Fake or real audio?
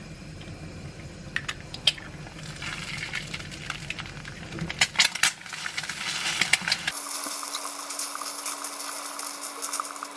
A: real